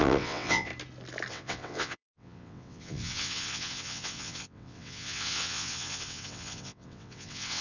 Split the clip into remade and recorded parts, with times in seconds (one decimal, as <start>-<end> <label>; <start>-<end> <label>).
0.0-0.7 remade; 0.7-1.3 recorded; 1.3-7.6 remade